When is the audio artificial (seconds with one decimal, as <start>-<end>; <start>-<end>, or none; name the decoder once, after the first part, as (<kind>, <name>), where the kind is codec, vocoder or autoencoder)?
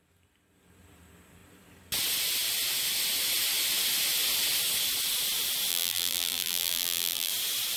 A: 5.7-7.3 (vocoder, BigVGAN v2)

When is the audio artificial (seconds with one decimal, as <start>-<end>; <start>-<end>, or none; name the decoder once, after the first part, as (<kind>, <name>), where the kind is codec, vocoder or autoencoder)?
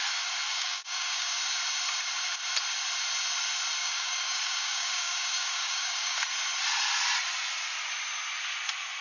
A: 0.5-1.4 (codec, DAC); 3.8-6.2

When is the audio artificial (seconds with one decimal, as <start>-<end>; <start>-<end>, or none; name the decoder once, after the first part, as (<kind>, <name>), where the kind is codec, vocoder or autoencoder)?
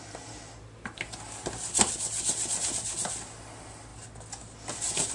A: none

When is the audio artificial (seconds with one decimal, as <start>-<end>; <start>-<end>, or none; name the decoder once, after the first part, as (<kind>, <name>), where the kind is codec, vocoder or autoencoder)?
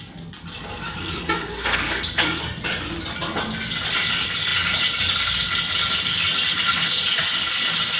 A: 1.0-2.4 (codec, SNAC)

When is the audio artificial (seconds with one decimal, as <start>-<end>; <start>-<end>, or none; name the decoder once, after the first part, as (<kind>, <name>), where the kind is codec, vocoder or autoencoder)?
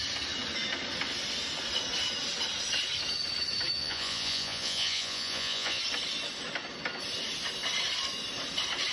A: 3.8-5.8 (vocoder, Vocos)